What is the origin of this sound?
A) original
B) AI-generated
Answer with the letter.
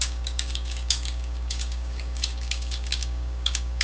B